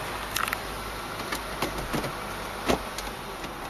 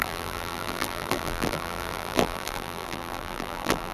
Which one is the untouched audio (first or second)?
first